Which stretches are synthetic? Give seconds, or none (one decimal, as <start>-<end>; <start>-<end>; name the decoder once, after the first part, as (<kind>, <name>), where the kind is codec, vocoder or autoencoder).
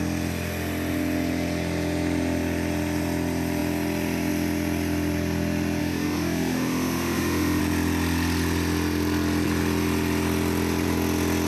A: 5.8-7.6 (autoencoder, DAC-VAE)